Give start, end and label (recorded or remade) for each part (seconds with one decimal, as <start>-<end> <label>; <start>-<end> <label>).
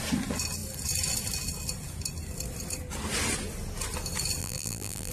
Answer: 0.0-4.4 recorded; 4.4-5.1 remade